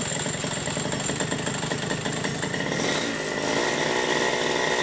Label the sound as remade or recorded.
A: recorded